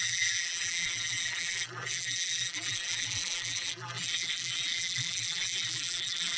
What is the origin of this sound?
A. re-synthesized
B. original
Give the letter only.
A